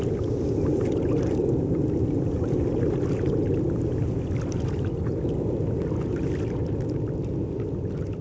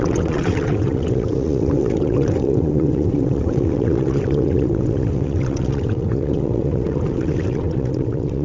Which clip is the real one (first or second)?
first